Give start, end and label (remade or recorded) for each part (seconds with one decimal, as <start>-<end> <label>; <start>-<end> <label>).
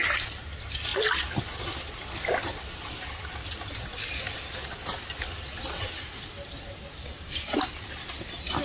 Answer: 0.0-7.0 recorded; 7.0-7.5 remade; 7.5-8.6 recorded